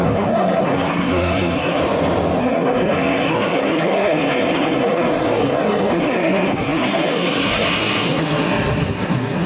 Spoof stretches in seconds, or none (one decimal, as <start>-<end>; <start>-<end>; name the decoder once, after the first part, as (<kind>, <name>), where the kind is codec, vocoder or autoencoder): 0.0-1.8 (codec, SNAC); 2.4-9.5